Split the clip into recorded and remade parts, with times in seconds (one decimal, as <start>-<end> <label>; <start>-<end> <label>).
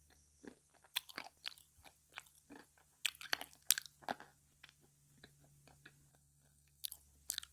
0.0-6.1 recorded; 6.1-6.9 remade; 6.9-7.5 recorded